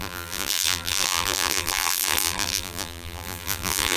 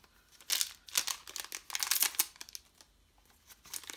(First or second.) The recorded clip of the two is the second